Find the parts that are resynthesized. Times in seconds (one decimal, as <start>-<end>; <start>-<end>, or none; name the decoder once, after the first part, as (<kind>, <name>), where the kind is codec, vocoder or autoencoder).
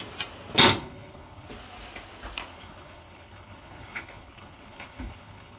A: 0.8-1.5 (codec, HILCodec); 2.5-5.6